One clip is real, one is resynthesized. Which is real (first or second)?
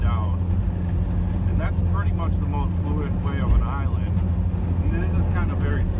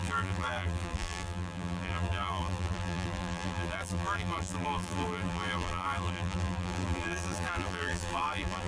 first